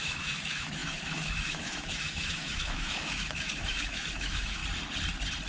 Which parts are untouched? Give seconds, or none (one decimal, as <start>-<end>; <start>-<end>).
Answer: 4.6-5.5